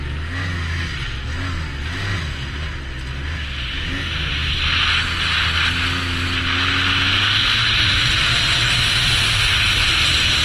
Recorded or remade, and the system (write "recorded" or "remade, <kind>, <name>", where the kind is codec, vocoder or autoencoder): recorded